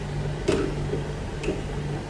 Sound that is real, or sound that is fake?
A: real